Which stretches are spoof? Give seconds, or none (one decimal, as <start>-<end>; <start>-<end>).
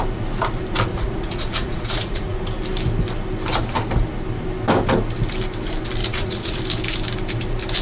0.9-2.4; 6.0-6.6